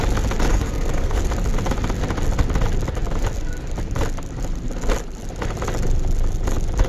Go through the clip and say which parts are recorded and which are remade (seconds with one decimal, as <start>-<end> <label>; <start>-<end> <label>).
0.0-0.5 recorded; 0.5-1.2 remade; 1.2-6.9 recorded